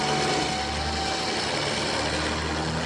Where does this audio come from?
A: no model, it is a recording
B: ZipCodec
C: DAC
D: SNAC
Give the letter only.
A